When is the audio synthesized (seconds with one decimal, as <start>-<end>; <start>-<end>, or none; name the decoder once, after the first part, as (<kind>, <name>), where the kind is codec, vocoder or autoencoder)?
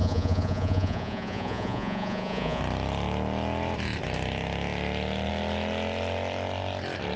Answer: 0.0-2.6 (vocoder, Vocos)